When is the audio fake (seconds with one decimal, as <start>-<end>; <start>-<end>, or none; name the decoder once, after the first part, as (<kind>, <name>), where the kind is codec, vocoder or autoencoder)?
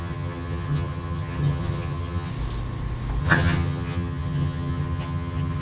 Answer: 0.0-2.3 (vocoder, HiFi-GAN); 3.2-5.6